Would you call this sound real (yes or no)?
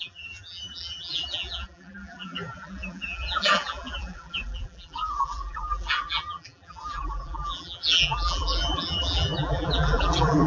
no